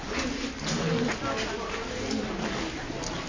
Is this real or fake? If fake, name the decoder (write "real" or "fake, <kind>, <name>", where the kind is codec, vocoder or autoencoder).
real